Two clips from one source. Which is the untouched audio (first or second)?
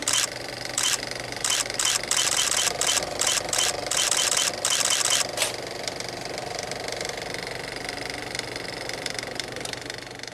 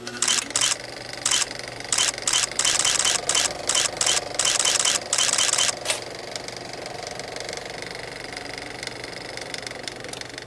second